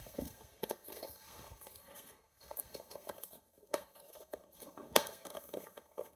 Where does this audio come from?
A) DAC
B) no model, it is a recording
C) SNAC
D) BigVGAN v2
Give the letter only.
C